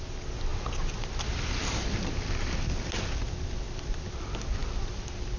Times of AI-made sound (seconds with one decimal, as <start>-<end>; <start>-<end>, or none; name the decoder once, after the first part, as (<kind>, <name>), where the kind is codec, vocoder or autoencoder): none